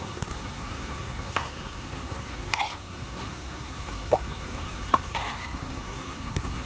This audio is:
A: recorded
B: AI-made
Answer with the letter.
B